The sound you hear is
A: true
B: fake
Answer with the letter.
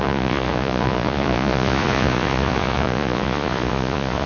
B